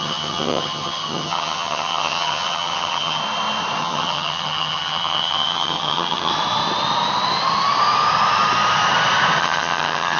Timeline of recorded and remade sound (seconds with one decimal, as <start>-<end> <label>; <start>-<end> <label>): 0.0-3.2 remade; 3.2-3.8 recorded; 3.8-6.3 remade; 6.3-9.4 recorded; 9.4-10.2 remade